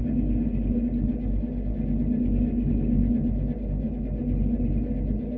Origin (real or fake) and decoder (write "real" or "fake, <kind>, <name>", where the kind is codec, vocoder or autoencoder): real